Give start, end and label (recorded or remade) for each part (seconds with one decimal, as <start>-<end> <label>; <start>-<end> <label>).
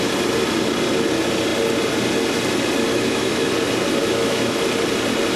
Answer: 0.0-2.9 recorded; 2.9-3.5 remade; 3.5-4.0 recorded; 4.0-4.6 remade; 4.6-5.4 recorded